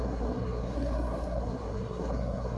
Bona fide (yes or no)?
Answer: no